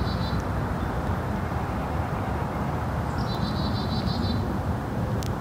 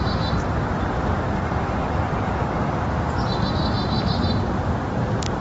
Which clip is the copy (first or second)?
second